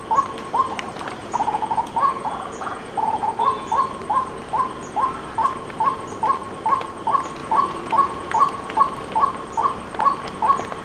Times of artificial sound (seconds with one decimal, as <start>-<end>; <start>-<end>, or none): 1.2-3.7; 7.4-8.8